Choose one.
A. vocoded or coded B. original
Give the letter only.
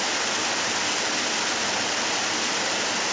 B